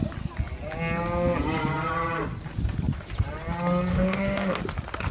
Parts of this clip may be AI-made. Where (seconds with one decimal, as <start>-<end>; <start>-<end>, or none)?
3.9-4.6